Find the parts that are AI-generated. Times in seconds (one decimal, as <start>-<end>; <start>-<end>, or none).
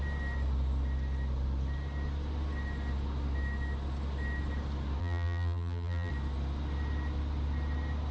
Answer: 5.0-6.1